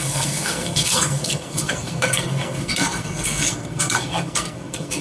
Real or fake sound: fake